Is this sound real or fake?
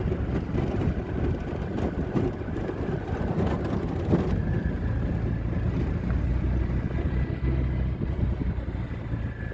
real